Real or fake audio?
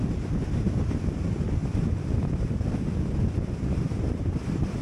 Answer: real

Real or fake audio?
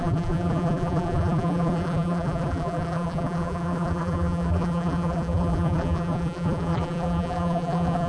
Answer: fake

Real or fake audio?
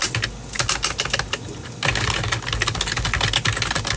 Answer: real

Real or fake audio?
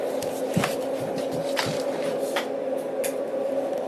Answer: real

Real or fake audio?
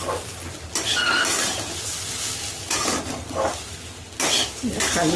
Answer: real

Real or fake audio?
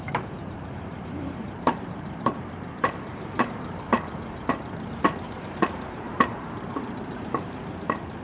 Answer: fake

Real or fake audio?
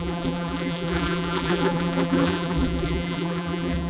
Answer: fake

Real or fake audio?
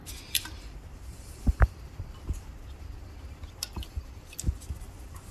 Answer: fake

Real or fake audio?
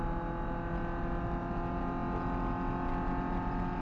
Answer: real